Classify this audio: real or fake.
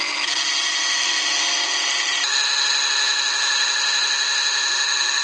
real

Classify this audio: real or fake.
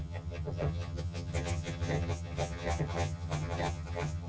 fake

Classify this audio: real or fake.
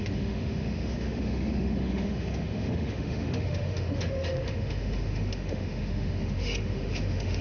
fake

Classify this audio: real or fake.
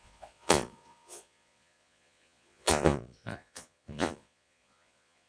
fake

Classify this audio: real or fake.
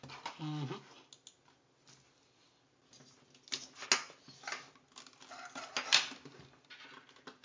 real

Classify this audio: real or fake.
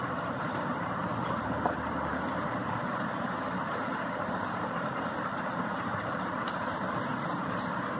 fake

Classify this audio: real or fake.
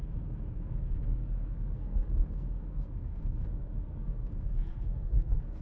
fake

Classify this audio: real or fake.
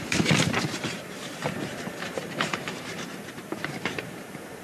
fake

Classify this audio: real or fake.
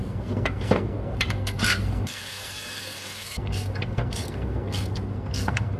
fake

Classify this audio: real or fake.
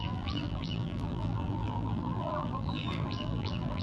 fake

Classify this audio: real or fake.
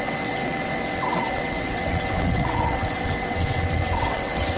fake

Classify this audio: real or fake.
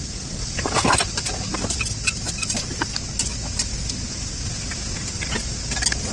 real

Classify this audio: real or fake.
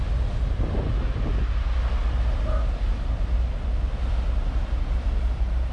real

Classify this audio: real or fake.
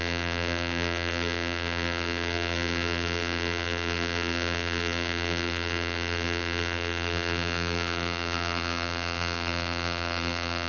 fake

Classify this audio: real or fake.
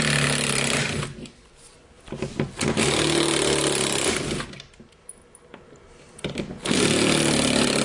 real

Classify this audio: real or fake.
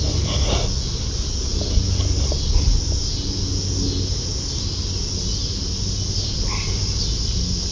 real